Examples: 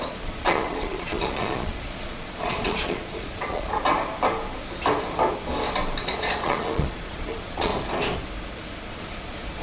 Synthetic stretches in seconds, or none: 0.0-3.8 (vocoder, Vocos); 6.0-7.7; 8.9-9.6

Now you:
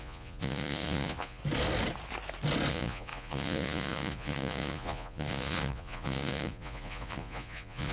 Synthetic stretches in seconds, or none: 0.0-1.4 (vocoder, Vocos); 2.7-7.9

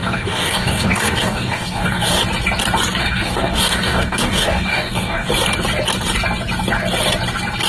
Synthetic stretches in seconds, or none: 0.0-2.2 (codec, DAC); 3.0-5.3